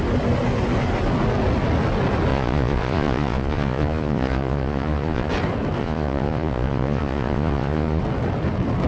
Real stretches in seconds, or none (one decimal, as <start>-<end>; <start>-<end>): 0.0-2.3; 5.3-5.8; 8.0-8.9